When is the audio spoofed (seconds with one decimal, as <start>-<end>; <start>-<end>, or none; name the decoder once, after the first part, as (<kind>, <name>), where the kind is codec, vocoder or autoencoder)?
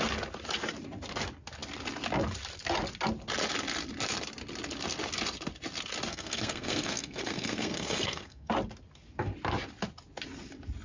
6.1-8.5 (codec, SNAC)